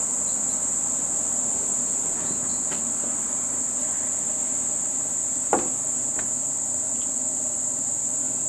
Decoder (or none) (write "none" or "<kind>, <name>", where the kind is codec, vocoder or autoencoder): none